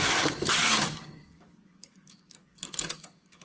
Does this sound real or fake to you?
fake